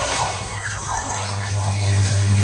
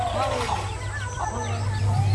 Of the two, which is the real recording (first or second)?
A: second